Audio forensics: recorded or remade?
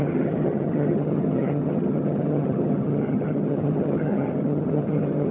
remade